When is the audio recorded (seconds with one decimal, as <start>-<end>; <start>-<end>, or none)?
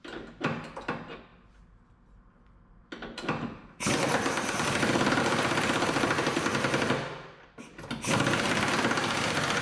0.0-9.6